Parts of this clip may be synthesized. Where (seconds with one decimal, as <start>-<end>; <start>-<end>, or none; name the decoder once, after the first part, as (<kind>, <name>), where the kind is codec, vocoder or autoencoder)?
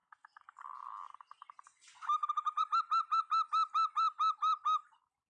2.6-3.2 (vocoder, BigVGAN v2)